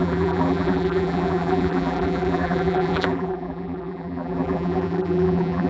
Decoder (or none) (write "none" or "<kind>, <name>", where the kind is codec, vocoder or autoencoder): vocoder, BigVGAN v2